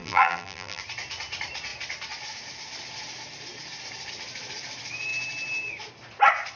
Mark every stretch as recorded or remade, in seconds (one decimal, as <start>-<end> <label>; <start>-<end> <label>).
0.0-0.8 remade; 0.8-6.6 recorded